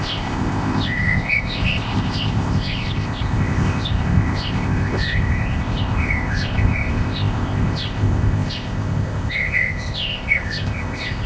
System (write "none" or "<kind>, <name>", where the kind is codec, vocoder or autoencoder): codec, ZipCodec